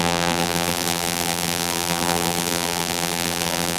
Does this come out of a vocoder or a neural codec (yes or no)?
yes